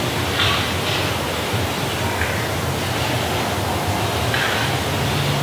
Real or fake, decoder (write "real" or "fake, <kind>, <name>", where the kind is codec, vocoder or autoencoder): real